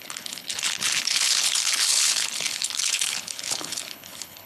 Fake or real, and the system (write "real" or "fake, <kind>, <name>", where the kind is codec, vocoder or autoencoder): fake, codec, HILCodec